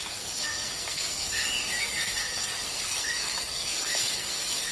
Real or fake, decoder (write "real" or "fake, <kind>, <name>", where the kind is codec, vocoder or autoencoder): fake, codec, SNAC